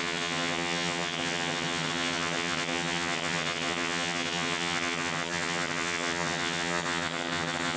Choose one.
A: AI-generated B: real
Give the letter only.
A